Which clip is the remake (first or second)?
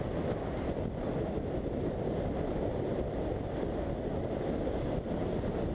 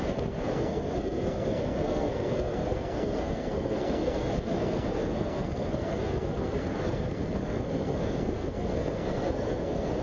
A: second